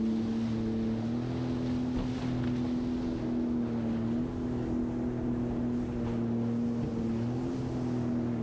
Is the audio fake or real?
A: real